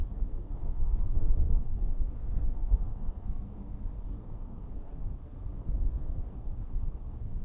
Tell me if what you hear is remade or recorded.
remade